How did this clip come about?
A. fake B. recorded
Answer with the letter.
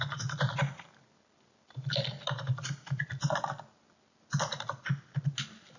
B